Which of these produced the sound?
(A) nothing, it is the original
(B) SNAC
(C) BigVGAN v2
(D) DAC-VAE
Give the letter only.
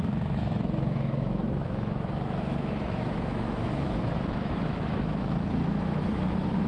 D